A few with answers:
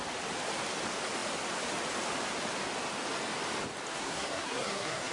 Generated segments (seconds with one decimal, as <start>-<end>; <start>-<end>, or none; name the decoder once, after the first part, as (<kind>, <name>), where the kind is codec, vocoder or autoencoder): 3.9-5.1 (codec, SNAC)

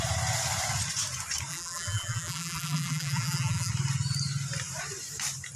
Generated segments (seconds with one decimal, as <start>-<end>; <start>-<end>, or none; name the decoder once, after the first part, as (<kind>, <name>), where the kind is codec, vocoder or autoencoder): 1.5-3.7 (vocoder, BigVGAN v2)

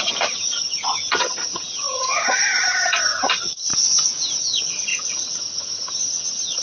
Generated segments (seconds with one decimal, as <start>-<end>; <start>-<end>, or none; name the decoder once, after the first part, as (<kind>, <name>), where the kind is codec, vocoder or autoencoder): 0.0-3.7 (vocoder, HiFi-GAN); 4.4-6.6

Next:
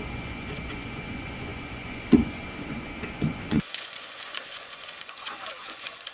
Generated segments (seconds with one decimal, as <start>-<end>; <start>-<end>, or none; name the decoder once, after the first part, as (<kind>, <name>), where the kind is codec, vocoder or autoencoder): 0.0-6.1 (vocoder, Vocos)

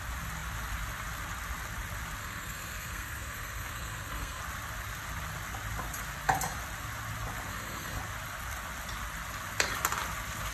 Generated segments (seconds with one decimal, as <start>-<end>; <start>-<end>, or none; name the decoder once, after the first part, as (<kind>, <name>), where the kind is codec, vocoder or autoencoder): 2.2-4.4 (codec, SNAC); 7.5-8.0

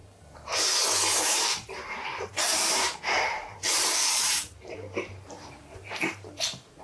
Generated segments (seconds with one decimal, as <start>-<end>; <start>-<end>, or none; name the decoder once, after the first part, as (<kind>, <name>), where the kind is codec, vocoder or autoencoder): 1.2-6.8 (vocoder, BigVGAN v2)

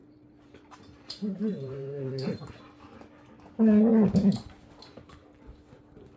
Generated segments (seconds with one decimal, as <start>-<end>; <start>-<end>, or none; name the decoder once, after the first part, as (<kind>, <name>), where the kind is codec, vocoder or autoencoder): 0.0-2.5 (vocoder, BigVGAN v2)

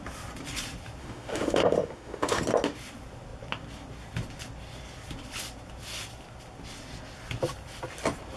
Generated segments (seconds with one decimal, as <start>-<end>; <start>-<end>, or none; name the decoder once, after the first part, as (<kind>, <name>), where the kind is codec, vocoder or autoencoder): 1.0-2.4 (autoencoder, DAC-VAE)